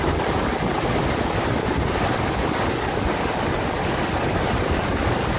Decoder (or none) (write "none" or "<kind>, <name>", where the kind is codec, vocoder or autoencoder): none